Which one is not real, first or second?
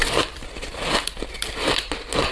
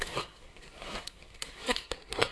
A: second